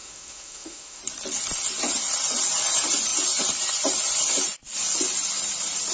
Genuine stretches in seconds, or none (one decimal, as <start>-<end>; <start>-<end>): 1.0-5.9